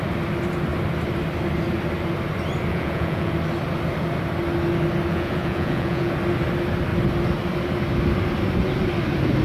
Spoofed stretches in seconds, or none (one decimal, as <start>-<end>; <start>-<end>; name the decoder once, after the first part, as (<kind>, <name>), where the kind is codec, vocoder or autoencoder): 2.7-3.3 (vocoder, Vocos); 5.1-6.1